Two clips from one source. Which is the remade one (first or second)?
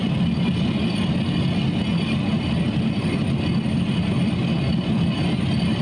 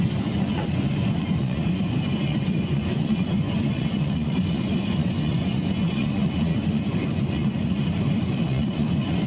second